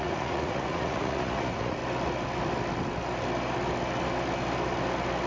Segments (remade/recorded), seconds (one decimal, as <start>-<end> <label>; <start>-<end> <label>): 0.0-1.8 remade; 1.8-5.3 recorded